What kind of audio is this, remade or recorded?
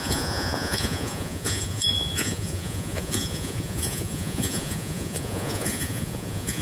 remade